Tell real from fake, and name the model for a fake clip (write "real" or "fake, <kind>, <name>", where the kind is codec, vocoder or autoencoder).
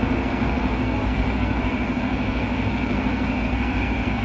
fake, codec, SNAC